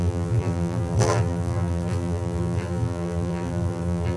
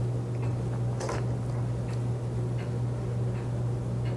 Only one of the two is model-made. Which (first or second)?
first